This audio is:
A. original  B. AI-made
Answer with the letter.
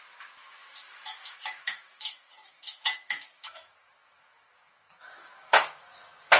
B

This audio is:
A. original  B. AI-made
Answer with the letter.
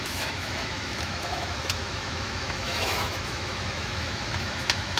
B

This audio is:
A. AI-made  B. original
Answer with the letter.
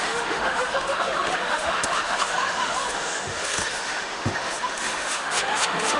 A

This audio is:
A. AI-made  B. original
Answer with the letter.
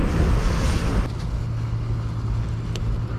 B